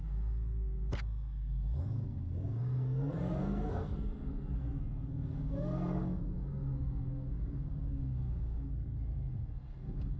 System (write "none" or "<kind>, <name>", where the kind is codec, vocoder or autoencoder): codec, SNAC